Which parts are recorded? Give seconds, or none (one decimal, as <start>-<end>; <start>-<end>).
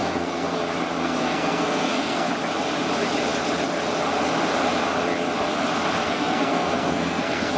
0.6-1.0; 2.3-6.0